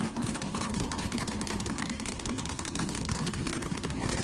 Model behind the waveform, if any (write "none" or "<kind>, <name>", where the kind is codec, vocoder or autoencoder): codec, SNAC